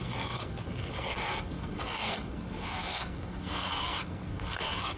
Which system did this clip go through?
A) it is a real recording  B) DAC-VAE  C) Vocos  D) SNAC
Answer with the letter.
D